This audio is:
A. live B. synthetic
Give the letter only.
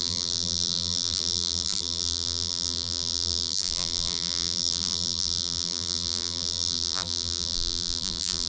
B